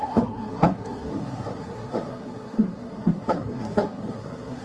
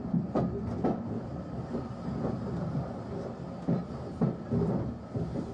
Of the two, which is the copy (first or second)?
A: first